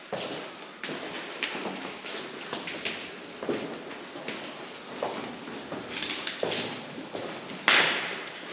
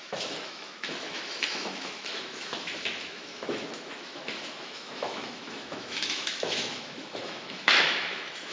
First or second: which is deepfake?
second